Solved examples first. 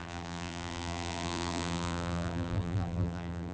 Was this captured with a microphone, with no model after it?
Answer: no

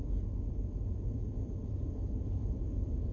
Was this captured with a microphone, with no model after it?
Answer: yes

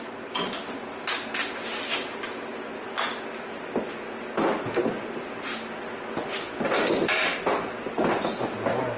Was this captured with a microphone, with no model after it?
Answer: yes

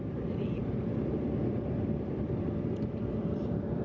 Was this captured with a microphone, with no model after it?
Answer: no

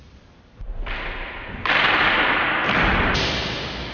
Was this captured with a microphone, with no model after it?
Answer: yes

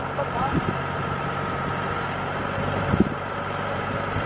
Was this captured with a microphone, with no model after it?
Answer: no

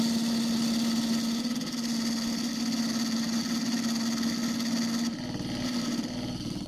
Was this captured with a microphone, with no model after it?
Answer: yes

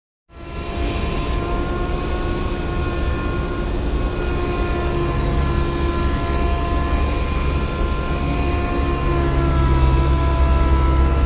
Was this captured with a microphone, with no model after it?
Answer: yes